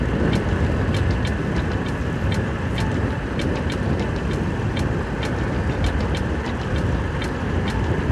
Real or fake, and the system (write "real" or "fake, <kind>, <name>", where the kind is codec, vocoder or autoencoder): real